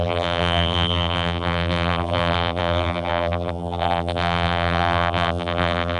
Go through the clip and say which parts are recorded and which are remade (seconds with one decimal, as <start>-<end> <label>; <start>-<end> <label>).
0.0-6.0 remade